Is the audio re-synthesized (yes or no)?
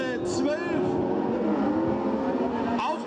no